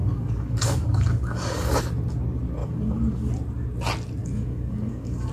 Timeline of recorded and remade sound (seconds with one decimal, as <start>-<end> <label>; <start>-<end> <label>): 0.0-1.8 remade; 1.8-2.6 recorded; 2.6-3.3 remade; 3.3-4.2 recorded; 4.2-5.3 remade